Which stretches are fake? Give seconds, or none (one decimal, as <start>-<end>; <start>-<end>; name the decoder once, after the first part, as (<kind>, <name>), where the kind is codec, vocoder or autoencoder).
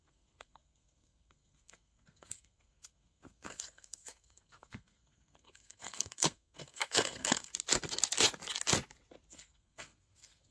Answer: 0.0-7.5 (codec, SNAC); 9.3-10.5